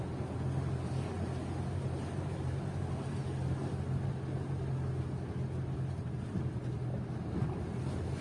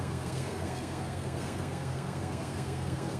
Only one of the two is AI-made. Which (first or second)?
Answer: second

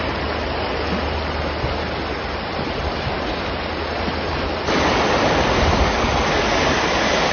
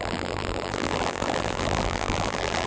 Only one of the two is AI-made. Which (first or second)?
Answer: second